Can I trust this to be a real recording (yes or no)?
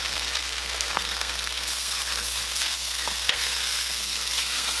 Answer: no